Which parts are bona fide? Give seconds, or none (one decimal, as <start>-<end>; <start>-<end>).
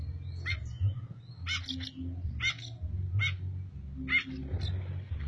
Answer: 0.0-5.3